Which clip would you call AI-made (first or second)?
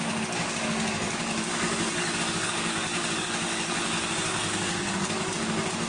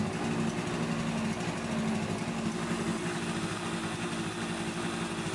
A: first